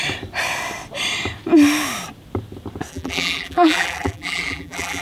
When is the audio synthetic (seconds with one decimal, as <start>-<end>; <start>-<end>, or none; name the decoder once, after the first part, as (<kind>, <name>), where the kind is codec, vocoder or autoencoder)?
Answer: 2.9-5.0 (vocoder, BigVGAN v2)

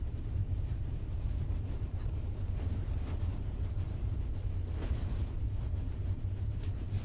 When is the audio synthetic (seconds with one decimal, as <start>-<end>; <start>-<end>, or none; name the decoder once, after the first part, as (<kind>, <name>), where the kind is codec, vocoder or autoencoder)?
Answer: 0.0-7.0 (vocoder, BigVGAN v2)

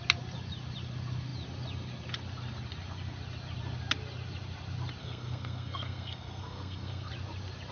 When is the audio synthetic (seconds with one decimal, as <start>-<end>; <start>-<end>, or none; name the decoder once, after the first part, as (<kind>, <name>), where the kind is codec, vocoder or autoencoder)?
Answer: 5.0-7.1 (codec, SNAC)

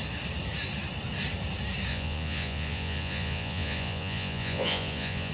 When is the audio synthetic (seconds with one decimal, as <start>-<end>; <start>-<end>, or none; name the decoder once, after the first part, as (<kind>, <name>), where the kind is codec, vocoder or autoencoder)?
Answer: 1.9-5.3 (vocoder, Vocos)

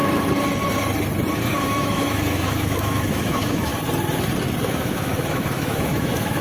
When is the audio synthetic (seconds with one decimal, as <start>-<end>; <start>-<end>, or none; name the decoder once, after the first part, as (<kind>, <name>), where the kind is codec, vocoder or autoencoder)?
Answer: 1.5-3.7 (autoencoder, DAC-VAE); 4.6-6.4